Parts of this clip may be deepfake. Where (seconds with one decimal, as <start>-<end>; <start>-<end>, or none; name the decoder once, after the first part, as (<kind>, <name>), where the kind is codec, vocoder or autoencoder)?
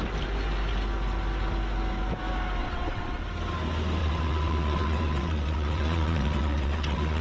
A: 2.6-3.2 (vocoder, WaveNeXt); 4.0-7.2